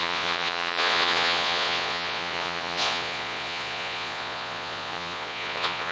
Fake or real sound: fake